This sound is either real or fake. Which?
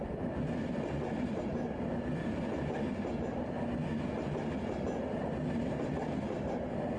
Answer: real